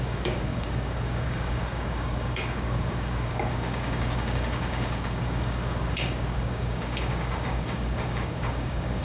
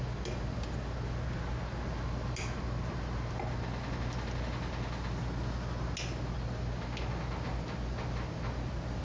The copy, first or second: first